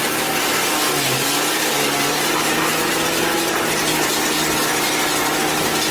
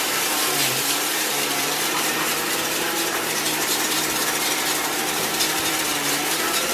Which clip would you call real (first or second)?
first